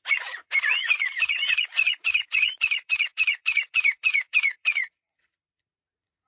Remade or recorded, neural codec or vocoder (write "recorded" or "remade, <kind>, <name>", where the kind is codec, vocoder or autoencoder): remade, vocoder, Vocos